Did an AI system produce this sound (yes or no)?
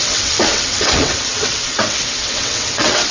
yes